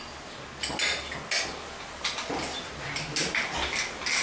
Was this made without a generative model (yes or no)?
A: yes